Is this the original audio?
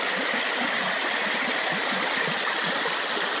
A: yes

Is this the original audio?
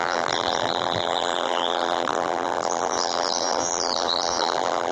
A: no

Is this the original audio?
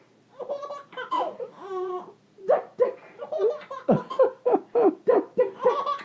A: no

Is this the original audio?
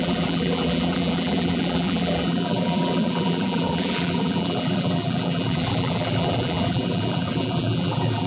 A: no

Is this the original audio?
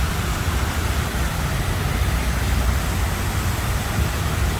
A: yes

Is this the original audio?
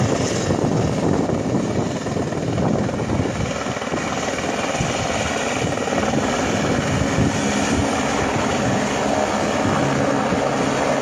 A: yes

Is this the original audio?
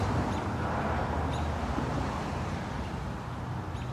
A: yes